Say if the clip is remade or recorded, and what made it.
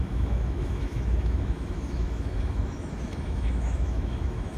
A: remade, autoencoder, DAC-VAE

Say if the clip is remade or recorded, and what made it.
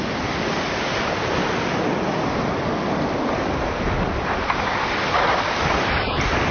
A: recorded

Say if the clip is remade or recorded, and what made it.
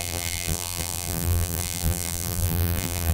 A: remade, vocoder, BigVGAN v2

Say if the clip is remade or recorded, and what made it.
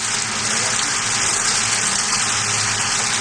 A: recorded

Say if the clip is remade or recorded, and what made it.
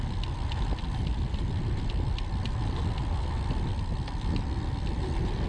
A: recorded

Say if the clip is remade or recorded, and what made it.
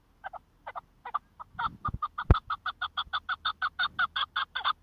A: recorded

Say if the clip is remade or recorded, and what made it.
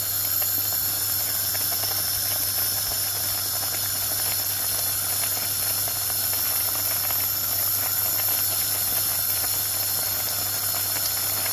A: recorded